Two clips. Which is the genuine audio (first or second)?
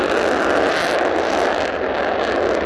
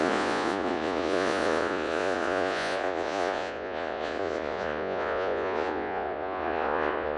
first